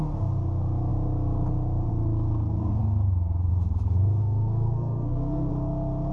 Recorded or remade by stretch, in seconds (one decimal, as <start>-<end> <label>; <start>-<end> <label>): 0.0-4.2 recorded; 4.2-5.5 remade; 5.5-6.1 recorded